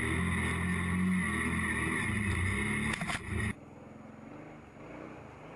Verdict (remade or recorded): recorded